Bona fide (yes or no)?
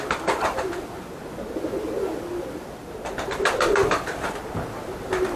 yes